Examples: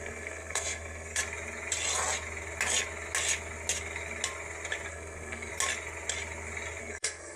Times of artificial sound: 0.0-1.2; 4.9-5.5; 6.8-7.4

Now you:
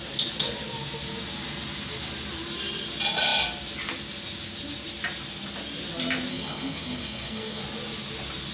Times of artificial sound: 6.3-7.6

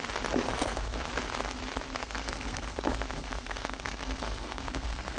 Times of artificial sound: 0.5-1.1; 2.0-5.2

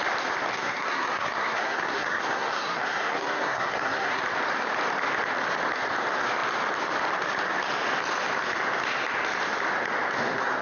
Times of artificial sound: 0.5-4.2

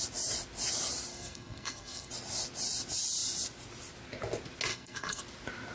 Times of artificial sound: 1.1-2.1; 4.7-5.2

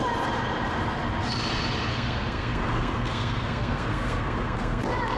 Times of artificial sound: 1.9-4.8

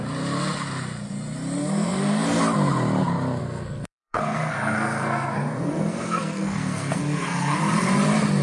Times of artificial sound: 1.6-2.4; 3.4-7.6